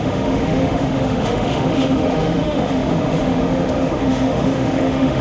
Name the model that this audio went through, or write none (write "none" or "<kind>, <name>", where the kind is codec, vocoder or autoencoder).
autoencoder, DAC-VAE